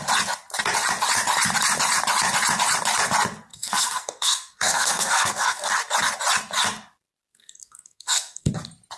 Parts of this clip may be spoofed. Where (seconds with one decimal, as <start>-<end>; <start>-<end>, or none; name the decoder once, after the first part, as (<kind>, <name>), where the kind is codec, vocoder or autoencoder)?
3.5-5.7 (codec, SNAC); 7.3-8.5